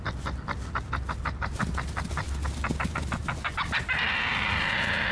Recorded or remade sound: recorded